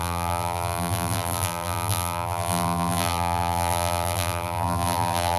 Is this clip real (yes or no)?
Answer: no